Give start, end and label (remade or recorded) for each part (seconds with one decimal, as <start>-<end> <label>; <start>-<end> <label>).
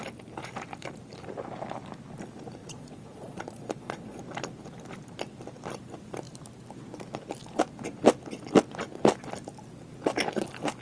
0.0-2.6 recorded; 2.6-4.2 remade; 4.2-10.8 recorded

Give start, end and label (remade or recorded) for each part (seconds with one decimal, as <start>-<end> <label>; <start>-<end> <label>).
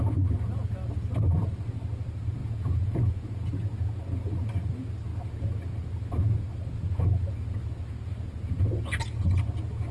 0.0-2.4 recorded; 2.4-3.9 remade; 3.9-9.9 recorded